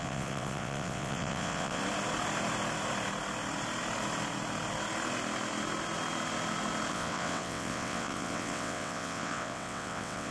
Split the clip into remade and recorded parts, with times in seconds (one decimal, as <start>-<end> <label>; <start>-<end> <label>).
0.0-1.8 remade; 1.8-6.9 recorded; 6.9-10.3 remade